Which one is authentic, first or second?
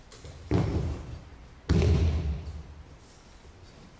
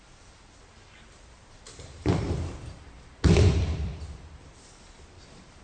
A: first